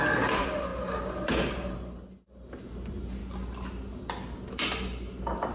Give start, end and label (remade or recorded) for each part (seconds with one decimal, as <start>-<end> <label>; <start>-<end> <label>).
0.0-5.5 recorded